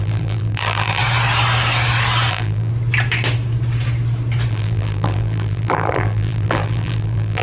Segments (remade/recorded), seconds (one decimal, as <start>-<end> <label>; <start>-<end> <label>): 0.0-1.0 remade; 1.0-2.3 recorded; 2.3-2.7 remade; 2.7-4.5 recorded; 4.5-7.4 remade